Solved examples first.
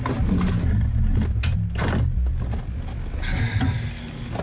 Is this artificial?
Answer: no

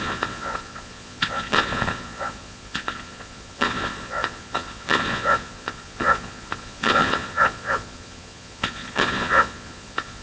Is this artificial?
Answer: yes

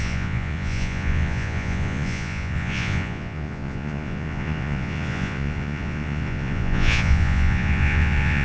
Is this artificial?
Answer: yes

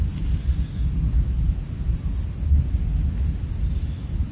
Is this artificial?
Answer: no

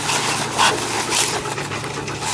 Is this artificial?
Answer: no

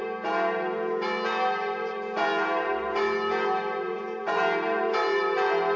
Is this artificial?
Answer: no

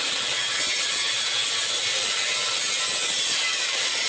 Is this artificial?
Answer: no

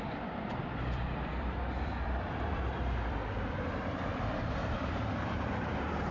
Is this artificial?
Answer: yes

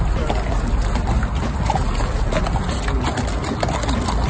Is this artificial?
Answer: no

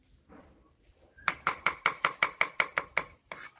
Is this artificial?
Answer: no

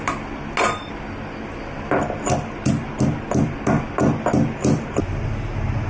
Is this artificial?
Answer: no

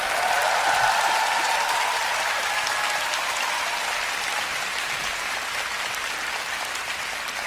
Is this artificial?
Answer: no